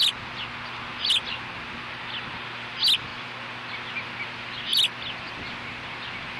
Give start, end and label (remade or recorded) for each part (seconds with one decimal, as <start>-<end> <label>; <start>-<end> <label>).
0.0-6.4 recorded